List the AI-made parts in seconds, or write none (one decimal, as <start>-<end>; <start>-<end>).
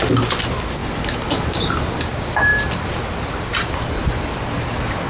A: none